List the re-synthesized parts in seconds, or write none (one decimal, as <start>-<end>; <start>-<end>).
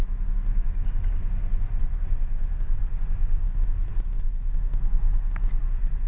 none